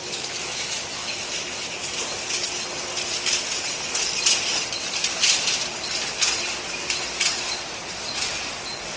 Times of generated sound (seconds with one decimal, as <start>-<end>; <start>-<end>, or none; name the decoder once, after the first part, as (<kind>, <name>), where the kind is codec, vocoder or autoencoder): 0.0-1.3 (autoencoder, DAC-VAE)